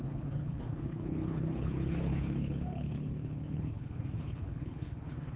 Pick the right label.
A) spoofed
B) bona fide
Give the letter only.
A